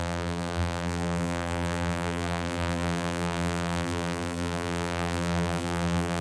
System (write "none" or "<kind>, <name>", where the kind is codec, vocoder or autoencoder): vocoder, BigVGAN v2